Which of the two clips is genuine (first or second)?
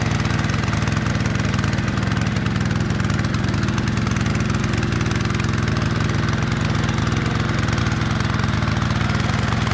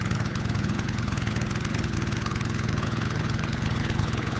first